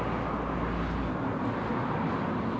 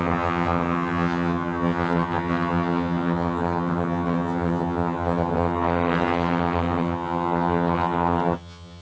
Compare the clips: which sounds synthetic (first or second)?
second